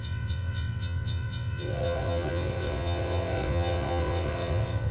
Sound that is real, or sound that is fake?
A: fake